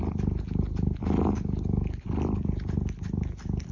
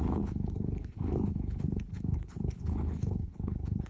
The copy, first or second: second